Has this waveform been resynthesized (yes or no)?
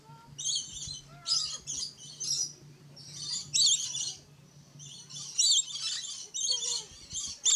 no